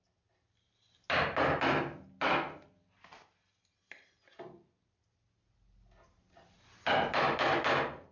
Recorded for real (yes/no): yes